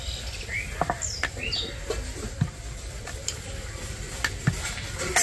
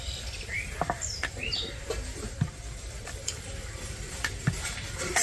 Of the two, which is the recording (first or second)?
first